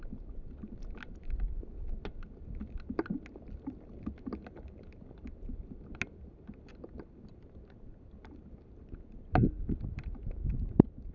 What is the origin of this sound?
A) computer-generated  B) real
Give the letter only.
B